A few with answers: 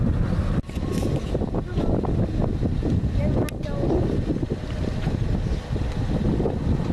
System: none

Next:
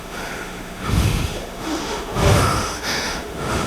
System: autoencoder, DAC-VAE